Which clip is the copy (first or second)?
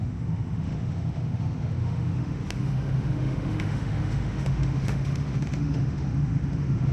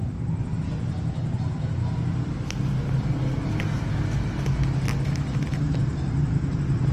first